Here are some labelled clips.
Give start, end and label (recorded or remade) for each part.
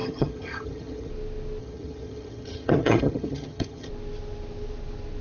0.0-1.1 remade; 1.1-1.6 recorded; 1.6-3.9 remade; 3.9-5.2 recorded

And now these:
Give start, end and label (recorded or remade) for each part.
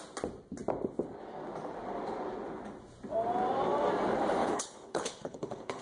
0.0-4.4 recorded; 4.4-5.8 remade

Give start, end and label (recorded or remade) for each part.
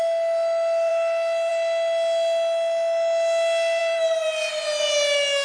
0.0-3.8 recorded; 3.8-4.5 remade; 4.5-5.4 recorded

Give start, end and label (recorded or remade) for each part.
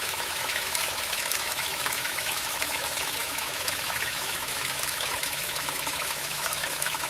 0.0-7.1 remade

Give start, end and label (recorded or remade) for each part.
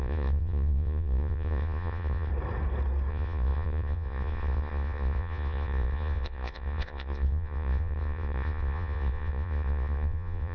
0.0-2.3 remade; 2.3-3.1 recorded; 3.1-10.5 remade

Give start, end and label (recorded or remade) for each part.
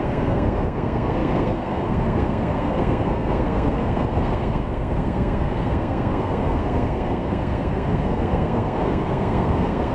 0.0-9.9 remade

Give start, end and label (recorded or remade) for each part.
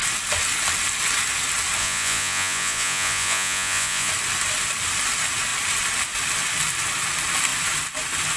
0.0-1.8 recorded; 1.8-4.1 remade; 4.1-8.4 recorded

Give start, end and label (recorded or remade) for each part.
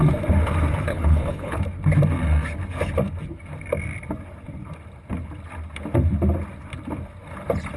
0.0-0.9 recorded; 0.9-1.6 remade; 1.6-7.8 recorded